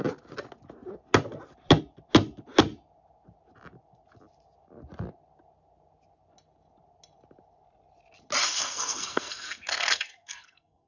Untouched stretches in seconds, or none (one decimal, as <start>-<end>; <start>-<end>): 0.0-8.4